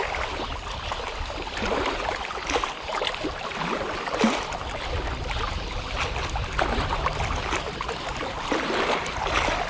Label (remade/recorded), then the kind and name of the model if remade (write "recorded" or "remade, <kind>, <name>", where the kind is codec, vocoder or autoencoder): recorded